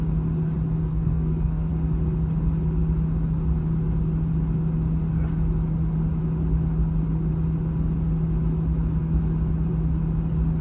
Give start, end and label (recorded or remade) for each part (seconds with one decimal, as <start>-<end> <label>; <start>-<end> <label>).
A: 0.0-0.9 recorded; 0.9-1.7 remade; 1.7-10.6 recorded